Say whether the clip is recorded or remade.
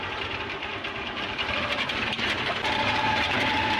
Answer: remade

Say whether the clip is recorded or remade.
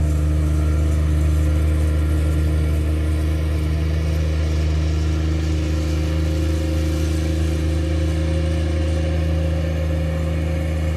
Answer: recorded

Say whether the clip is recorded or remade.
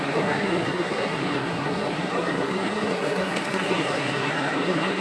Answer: remade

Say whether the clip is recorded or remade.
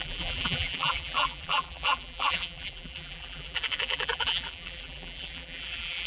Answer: remade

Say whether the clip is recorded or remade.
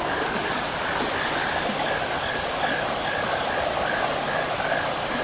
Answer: recorded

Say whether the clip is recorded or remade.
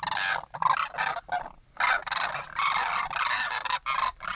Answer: recorded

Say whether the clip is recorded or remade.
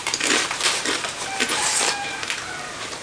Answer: remade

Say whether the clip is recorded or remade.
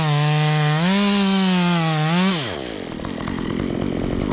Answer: recorded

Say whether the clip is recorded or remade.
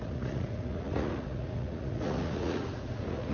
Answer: remade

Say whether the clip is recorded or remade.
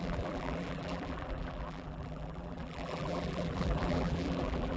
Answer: remade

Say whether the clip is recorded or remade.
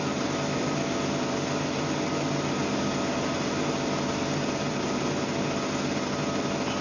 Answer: recorded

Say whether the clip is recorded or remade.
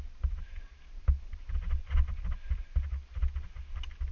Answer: recorded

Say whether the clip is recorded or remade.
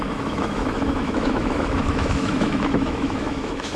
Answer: remade